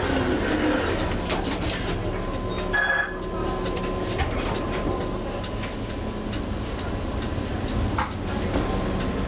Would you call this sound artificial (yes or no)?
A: no